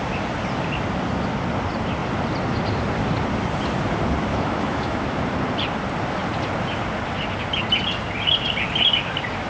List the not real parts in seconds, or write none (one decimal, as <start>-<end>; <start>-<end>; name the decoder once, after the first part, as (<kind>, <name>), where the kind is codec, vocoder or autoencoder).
4.3-5.2 (autoencoder, DAC-VAE)